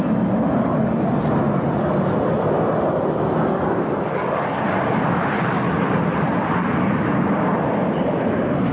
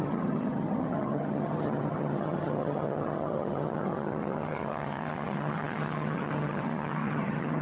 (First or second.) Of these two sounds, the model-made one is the second